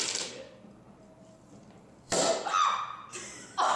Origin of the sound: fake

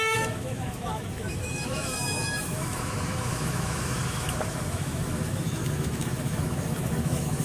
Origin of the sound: fake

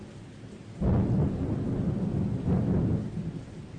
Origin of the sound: real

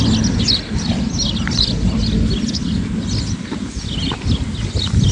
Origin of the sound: real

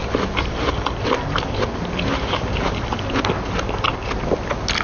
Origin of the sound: real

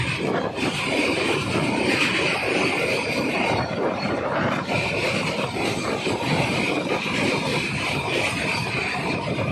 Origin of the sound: fake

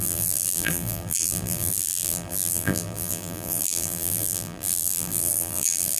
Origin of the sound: fake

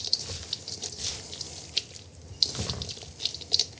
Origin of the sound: real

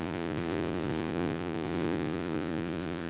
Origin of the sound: fake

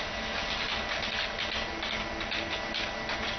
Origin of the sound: real